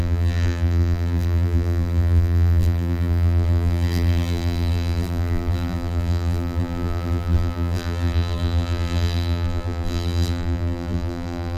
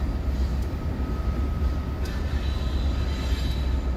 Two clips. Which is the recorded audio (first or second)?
second